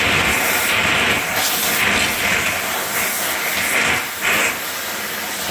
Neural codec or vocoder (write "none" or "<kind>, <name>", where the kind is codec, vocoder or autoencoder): none